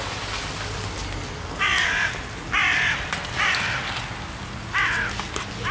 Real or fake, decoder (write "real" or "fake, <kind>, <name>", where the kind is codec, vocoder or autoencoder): real